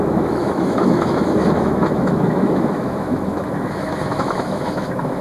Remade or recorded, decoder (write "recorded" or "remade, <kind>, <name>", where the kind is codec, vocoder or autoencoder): remade, autoencoder, DAC-VAE